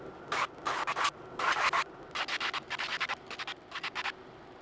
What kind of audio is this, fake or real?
real